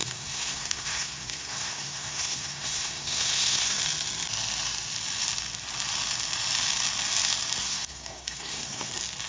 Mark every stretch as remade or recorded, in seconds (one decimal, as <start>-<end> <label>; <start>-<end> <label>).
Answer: 0.0-3.8 remade; 3.8-7.6 recorded; 7.6-8.9 remade; 8.9-9.3 recorded